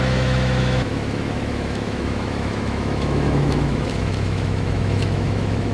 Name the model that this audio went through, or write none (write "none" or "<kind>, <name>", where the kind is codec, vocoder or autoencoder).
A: autoencoder, DAC-VAE